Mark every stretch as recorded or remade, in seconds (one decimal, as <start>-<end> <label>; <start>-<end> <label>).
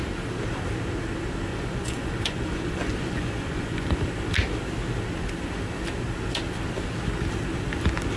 0.0-1.5 recorded; 1.5-4.0 remade; 4.0-8.2 recorded